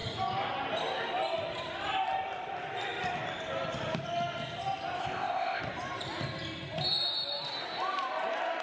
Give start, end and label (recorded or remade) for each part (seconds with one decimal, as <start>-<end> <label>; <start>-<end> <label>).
0.0-5.0 recorded; 5.0-5.6 remade; 5.6-8.6 recorded